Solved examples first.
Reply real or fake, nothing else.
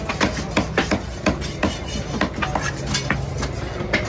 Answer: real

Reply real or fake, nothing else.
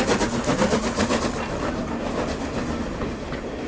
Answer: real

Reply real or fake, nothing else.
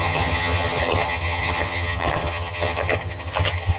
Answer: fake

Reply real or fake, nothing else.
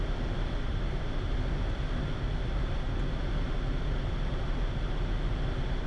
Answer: real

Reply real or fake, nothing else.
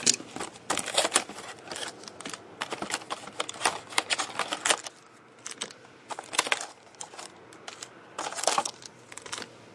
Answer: real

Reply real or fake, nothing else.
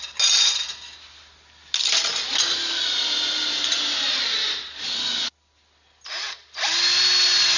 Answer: real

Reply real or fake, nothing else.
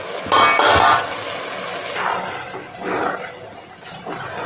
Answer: real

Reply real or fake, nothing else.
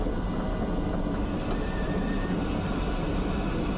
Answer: real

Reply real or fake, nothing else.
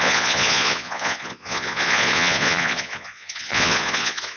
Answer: fake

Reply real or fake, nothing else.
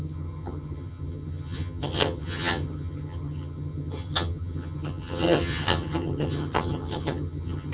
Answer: fake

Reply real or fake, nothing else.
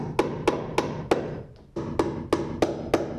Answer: real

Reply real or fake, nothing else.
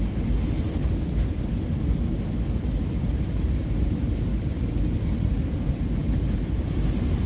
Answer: real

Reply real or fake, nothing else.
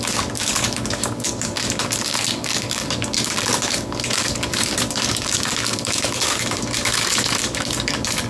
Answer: fake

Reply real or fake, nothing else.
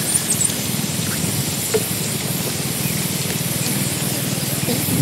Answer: real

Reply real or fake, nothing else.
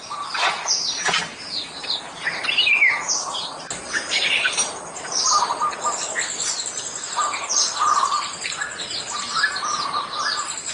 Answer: real